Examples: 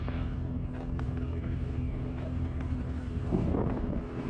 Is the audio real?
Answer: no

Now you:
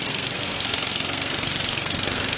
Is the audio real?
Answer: no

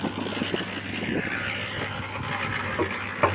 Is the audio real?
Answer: yes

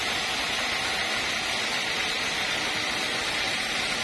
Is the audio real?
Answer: yes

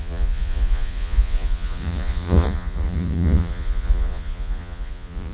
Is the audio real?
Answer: no